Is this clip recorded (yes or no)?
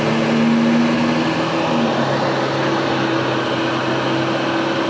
yes